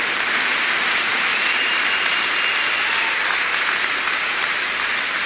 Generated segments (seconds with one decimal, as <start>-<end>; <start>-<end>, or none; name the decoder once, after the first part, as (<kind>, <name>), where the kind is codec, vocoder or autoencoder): 0.0-1.3 (vocoder, BigVGAN v2); 4.5-5.3